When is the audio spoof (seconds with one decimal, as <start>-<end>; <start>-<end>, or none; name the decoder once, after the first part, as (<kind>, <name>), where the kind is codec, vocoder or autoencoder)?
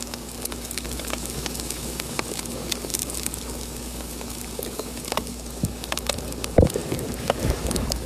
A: 0.0-8.1 (codec, DAC)